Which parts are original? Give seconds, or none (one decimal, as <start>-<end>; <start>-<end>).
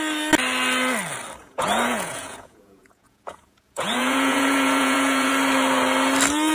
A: 0.0-1.4; 5.3-6.5